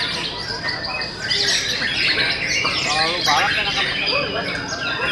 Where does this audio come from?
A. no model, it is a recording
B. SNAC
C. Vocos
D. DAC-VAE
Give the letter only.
A